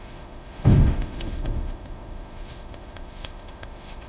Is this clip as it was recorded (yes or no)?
no